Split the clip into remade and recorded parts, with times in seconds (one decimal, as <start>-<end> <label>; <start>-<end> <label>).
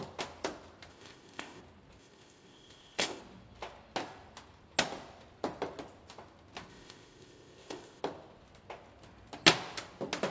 0.0-0.9 recorded; 0.9-1.6 remade; 1.6-2.0 recorded; 2.0-3.2 remade; 3.2-6.7 recorded; 6.7-8.0 remade; 8.0-10.3 recorded